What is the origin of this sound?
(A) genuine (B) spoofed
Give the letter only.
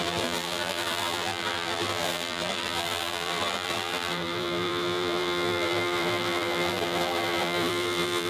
B